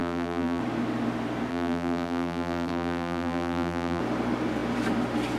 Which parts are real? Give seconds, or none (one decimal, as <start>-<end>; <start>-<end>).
0.6-1.5; 4.0-5.4